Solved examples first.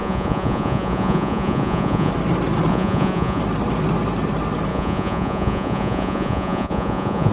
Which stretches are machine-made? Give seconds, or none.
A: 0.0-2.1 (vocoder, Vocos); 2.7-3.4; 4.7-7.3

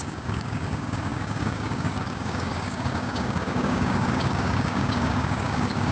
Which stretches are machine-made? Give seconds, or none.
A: 0.0-5.9 (codec, DAC)

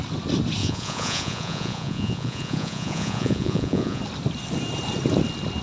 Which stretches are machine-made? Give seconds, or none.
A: 0.6-4.0 (vocoder, Vocos)

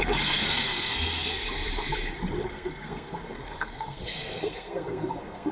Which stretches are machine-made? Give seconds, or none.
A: 0.0-1.4 (codec, SNAC); 2.5-5.5

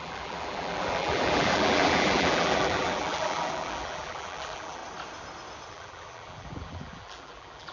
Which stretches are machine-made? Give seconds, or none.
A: 0.0-4.8 (vocoder, BigVGAN v2); 5.7-7.7

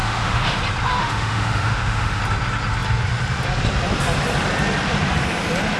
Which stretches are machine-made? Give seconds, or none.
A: 0.0-0.6 (autoencoder, DAC-VAE); 1.0-2.2